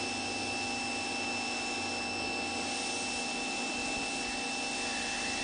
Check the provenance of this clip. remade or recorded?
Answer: recorded